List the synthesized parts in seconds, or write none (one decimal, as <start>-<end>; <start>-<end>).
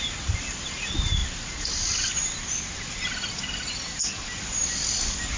none